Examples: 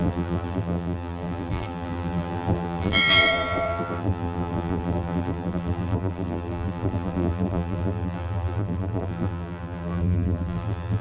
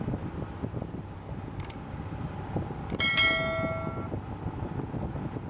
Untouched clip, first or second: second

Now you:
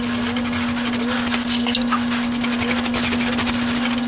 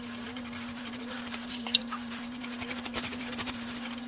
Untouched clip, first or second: first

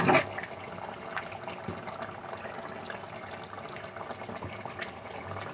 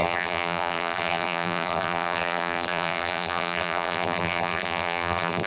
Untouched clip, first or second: first